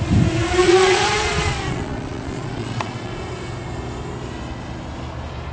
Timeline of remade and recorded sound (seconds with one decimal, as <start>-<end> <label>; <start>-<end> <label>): 0.0-0.6 recorded; 0.6-3.1 remade; 3.1-5.5 recorded